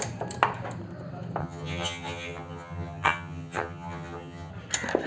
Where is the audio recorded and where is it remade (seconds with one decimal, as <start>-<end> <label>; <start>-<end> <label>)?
0.0-1.4 recorded; 1.4-4.5 remade; 4.5-5.1 recorded